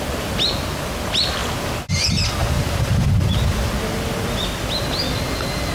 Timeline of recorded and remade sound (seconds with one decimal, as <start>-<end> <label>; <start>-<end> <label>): 0.0-2.4 recorded; 2.4-3.7 remade; 3.7-5.7 recorded